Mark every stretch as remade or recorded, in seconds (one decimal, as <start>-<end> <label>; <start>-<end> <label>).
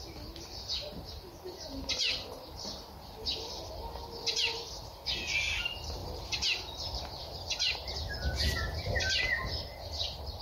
0.0-10.4 recorded